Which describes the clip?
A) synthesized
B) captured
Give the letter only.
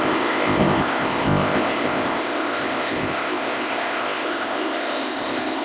A